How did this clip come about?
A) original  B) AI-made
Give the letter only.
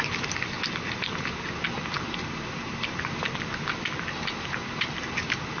A